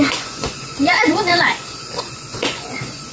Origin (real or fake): fake